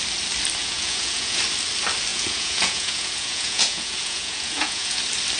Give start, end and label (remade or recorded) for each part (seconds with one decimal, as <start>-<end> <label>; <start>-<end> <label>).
0.0-0.6 recorded; 0.6-1.4 remade; 1.4-2.1 recorded; 2.1-5.0 remade; 5.0-5.4 recorded